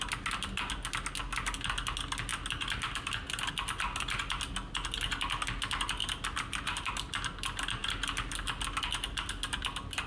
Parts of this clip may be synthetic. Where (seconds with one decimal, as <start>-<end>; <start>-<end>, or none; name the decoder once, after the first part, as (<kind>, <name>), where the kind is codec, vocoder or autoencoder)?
6.0-6.9 (vocoder, BigVGAN v2)